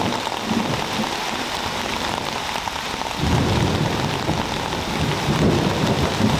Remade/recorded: recorded